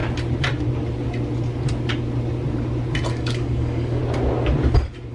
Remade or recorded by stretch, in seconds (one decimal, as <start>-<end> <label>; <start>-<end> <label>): 0.0-3.1 recorded; 3.1-4.0 remade; 4.0-5.1 recorded